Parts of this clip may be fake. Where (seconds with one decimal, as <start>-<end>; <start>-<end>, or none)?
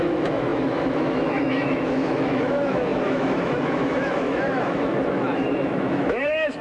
0.0-6.6